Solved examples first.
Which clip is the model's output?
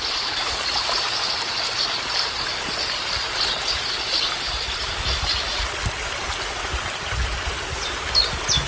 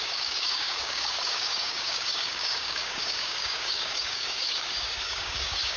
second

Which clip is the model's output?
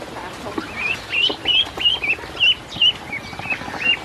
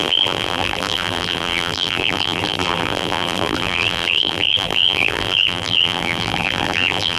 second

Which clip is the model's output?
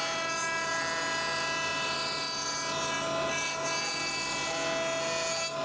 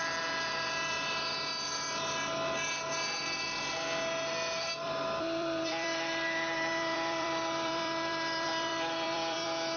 second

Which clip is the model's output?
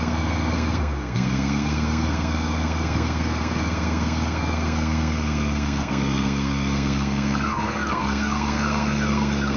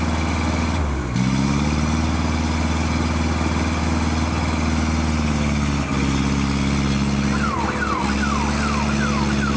first